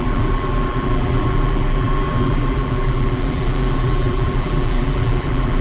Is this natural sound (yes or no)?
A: no